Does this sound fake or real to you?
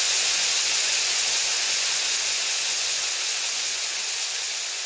fake